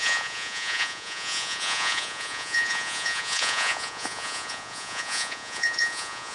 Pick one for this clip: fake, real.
fake